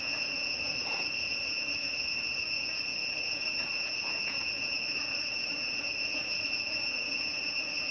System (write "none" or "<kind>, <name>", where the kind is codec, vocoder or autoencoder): vocoder, Vocos